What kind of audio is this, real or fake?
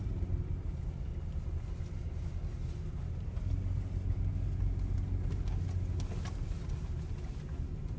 real